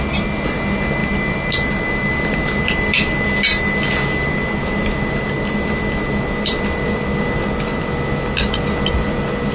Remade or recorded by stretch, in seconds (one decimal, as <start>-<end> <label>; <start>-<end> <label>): 0.0-9.5 recorded